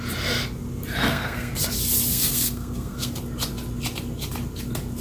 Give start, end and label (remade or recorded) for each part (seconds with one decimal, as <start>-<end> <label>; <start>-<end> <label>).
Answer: 0.0-1.1 recorded; 1.1-1.6 remade; 1.6-2.1 recorded; 2.1-3.2 remade; 3.2-5.0 recorded